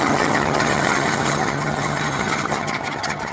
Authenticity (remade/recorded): remade